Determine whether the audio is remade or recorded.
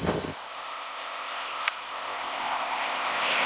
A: remade